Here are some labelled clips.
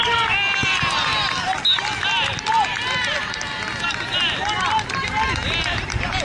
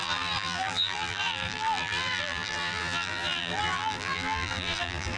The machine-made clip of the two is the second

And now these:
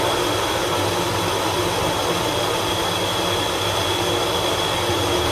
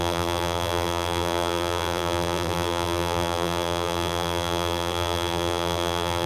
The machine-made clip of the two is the second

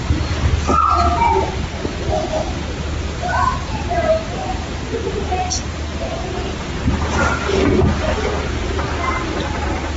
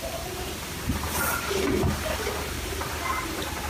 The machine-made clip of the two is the second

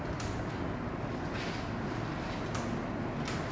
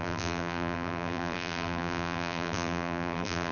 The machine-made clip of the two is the second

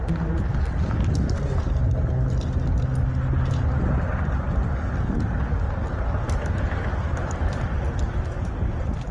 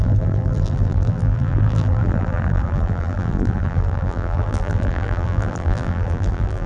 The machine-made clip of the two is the second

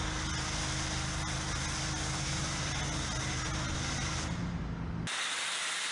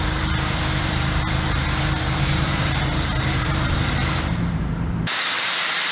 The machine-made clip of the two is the second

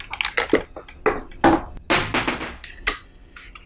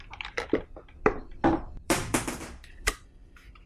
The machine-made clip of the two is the second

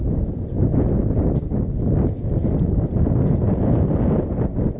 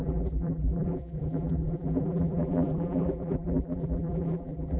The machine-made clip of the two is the second